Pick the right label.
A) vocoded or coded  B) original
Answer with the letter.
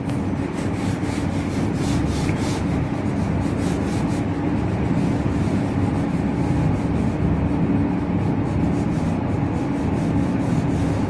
B